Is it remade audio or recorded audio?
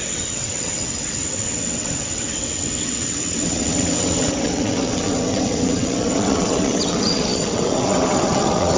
remade